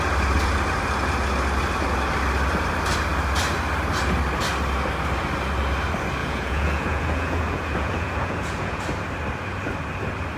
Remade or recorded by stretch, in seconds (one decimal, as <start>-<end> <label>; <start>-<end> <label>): 0.0-6.2 recorded; 6.2-8.8 remade; 8.8-10.4 recorded